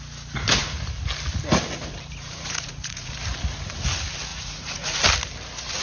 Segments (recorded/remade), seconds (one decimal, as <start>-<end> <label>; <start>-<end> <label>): 0.0-2.2 recorded; 2.2-3.1 remade; 3.1-4.3 recorded; 4.3-5.0 remade; 5.0-5.8 recorded